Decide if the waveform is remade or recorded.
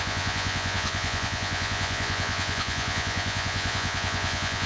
remade